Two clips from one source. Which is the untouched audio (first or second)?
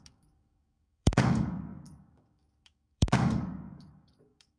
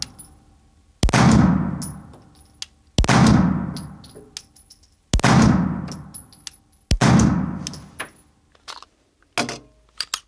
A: second